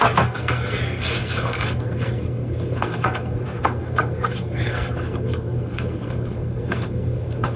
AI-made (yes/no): yes